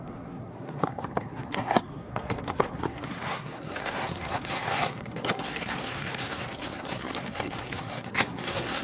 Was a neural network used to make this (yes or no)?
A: yes